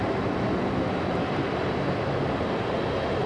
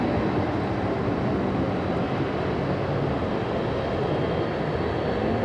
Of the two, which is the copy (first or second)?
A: first